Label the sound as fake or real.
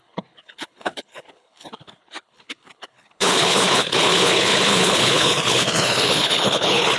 fake